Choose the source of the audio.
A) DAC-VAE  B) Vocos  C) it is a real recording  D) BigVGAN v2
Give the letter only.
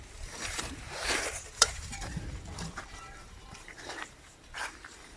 D